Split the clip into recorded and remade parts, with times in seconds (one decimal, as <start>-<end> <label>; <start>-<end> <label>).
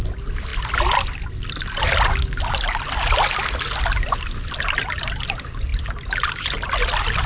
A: 0.0-7.3 recorded